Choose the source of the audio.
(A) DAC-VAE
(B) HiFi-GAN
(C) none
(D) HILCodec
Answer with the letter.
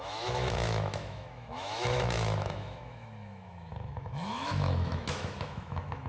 A